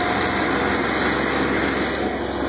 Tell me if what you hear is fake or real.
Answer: real